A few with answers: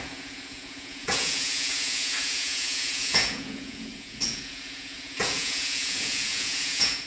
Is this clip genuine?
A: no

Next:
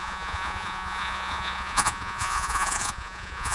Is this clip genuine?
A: no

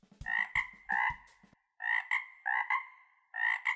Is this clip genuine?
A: yes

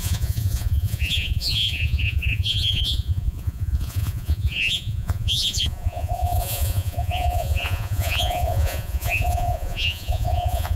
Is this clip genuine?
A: no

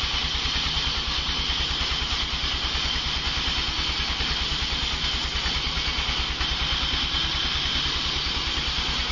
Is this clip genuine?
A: yes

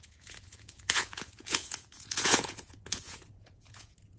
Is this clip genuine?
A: no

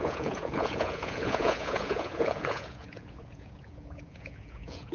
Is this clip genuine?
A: no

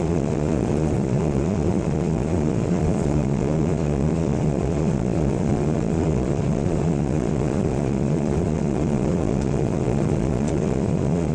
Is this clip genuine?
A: no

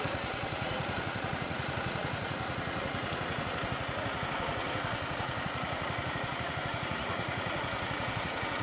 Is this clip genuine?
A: no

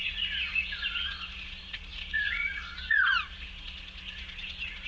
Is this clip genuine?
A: no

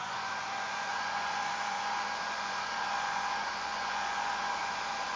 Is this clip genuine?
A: no